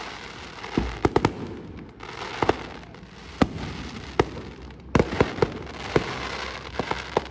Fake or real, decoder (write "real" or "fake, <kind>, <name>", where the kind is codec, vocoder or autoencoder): real